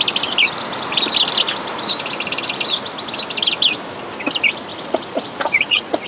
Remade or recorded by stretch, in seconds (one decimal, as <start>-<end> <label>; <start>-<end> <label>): 0.0-4.7 recorded; 4.7-6.1 remade